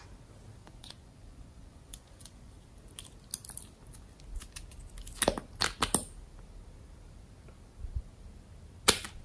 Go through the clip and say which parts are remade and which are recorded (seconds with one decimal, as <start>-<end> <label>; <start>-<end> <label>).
0.0-0.6 recorded; 0.6-2.5 remade; 2.5-9.2 recorded